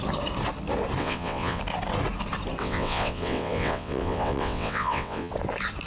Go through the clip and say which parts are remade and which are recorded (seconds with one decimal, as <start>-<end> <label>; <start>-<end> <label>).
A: 0.0-1.0 recorded; 1.0-1.6 remade; 1.6-2.6 recorded; 2.6-5.3 remade; 5.3-5.9 recorded